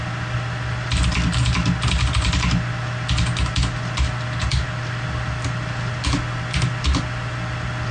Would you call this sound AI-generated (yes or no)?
no